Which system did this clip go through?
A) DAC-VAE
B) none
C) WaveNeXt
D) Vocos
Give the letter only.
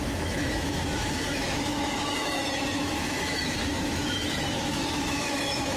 A